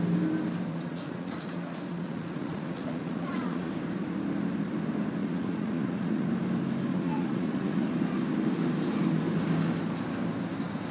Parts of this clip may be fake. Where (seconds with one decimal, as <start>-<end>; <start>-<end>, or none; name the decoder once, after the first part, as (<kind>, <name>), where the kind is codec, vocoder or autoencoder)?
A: 0.7-3.7 (vocoder, Vocos); 5.2-6.3; 6.9-7.9